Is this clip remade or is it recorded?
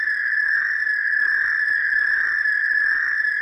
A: recorded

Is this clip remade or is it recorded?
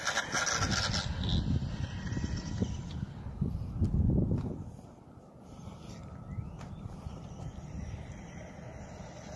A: recorded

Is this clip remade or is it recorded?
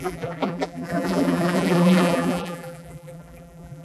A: remade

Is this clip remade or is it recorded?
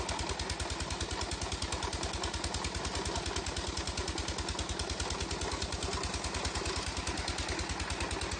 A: recorded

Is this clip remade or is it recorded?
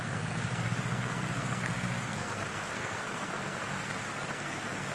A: remade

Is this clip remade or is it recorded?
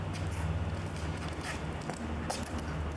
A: recorded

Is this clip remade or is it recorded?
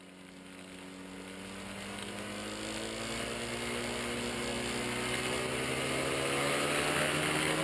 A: recorded